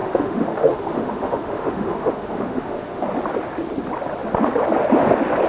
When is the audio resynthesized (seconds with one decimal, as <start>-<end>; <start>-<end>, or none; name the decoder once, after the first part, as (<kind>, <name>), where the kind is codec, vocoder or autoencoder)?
0.0-3.0 (autoencoder, DAC-VAE)